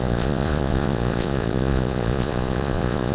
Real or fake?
fake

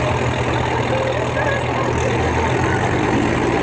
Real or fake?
real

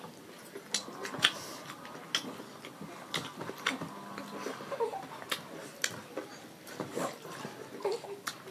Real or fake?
real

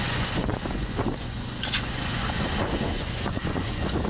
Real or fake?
fake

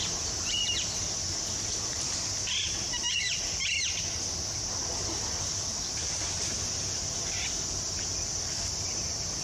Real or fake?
real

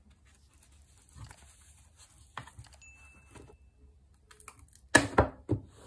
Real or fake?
real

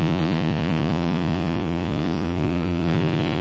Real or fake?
fake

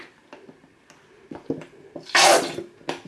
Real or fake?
real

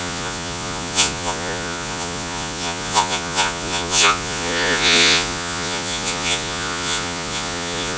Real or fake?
fake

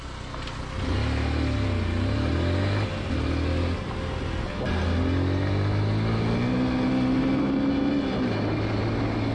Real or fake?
real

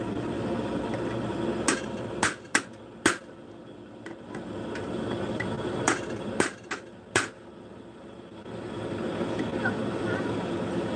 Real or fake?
real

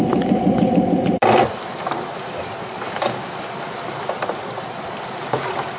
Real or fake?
real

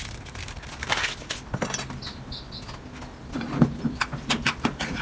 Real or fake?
real